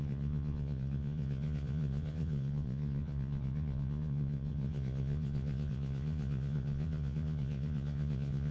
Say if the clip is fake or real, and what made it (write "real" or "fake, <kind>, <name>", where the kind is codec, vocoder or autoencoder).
fake, vocoder, Vocos